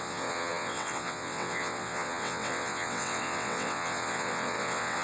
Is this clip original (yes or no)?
no